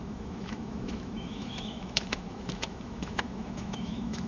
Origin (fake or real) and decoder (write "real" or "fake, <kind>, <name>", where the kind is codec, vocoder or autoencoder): fake, autoencoder, DAC-VAE